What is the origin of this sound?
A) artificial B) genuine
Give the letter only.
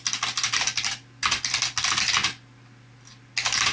B